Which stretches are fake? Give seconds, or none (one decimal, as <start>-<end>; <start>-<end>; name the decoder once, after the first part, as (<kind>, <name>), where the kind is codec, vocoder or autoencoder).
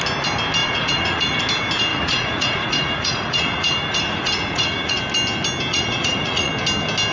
0.6-1.4 (vocoder, Vocos); 1.9-5.0; 5.7-6.5